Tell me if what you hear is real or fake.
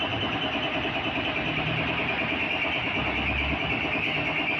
real